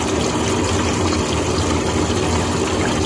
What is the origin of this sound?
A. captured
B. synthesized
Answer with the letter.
A